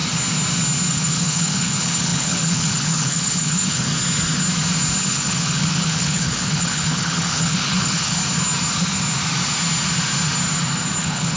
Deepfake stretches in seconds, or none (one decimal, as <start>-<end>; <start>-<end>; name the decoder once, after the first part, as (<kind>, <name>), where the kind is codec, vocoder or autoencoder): 0.9-3.9 (codec, HILCodec); 5.0-8.2; 11.0-11.4